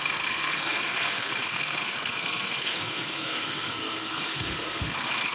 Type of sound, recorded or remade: remade